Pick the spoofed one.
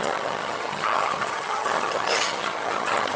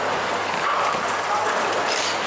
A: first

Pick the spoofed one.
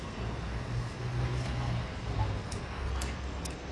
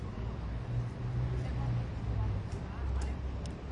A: first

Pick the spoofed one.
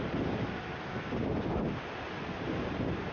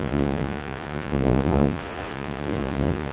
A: second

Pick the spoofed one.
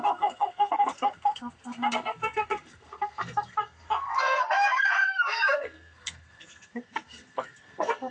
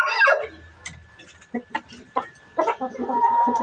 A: first